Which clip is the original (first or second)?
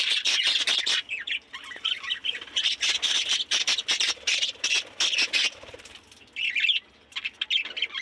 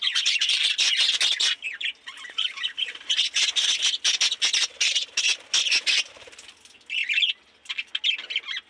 second